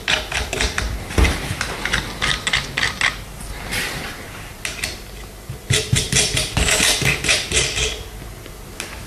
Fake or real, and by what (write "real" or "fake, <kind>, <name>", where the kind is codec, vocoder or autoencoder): real